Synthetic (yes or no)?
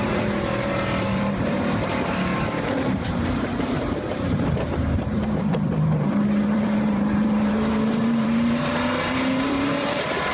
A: yes